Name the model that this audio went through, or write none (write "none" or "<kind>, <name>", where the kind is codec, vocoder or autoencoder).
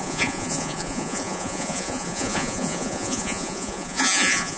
vocoder, Vocos